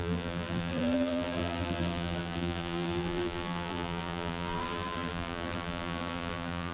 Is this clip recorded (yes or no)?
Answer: no